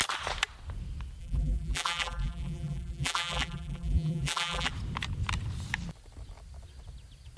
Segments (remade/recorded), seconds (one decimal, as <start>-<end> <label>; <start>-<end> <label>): 0.0-1.2 recorded; 1.2-4.7 remade; 4.7-7.4 recorded